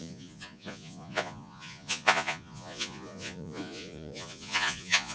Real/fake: fake